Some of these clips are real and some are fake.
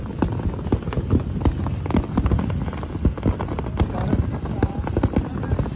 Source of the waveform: real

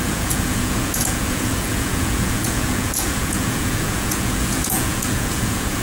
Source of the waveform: fake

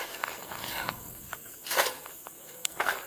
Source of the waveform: fake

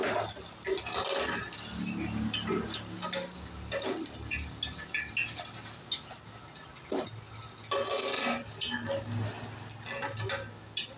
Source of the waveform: real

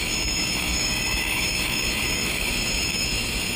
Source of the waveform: fake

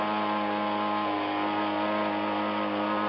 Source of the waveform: real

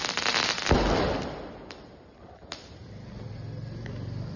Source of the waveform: real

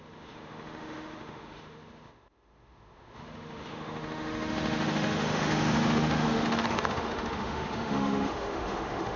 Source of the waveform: fake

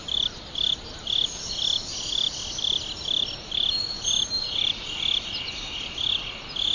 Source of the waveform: real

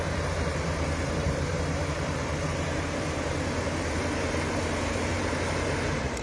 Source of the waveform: fake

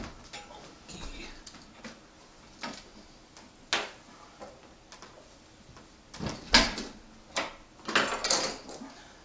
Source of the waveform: real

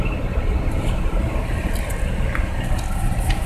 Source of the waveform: real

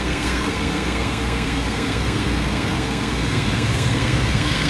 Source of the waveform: fake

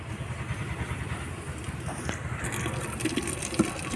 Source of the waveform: fake